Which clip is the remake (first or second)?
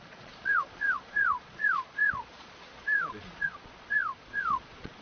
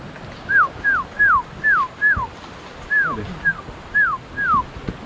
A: first